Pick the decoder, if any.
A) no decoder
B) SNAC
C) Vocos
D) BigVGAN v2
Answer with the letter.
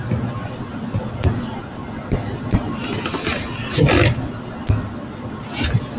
A